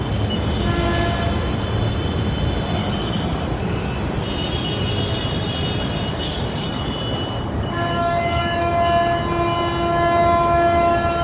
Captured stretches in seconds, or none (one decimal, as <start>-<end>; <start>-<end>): 0.0-2.8; 3.9-6.1; 8.7-11.2